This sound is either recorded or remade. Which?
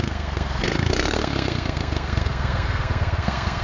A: remade